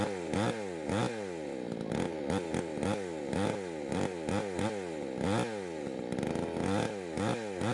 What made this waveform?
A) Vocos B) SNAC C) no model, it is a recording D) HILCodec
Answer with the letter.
C